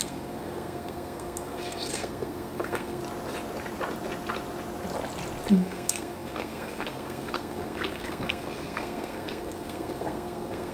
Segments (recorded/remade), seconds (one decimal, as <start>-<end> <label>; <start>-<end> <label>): 0.0-3.0 remade; 3.0-5.5 recorded; 5.5-10.7 remade